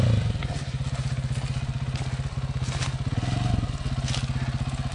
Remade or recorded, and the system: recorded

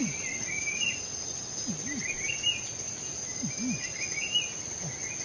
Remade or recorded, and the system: recorded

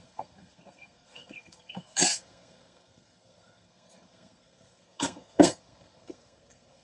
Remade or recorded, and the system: remade, codec, SNAC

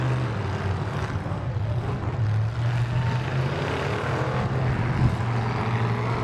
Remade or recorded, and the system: recorded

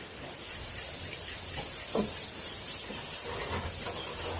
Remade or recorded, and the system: recorded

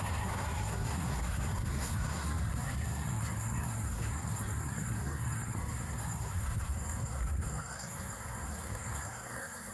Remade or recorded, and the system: remade, codec, SNAC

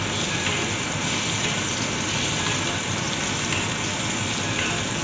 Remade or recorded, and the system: recorded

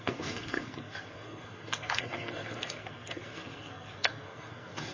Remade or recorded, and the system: remade, codec, SNAC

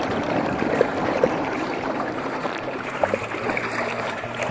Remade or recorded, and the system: remade, vocoder, BigVGAN v2